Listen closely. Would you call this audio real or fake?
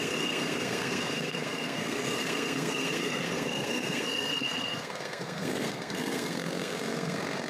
fake